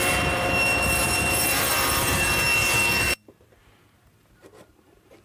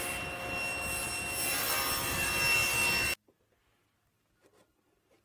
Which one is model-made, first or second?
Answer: first